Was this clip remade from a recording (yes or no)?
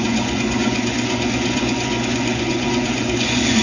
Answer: yes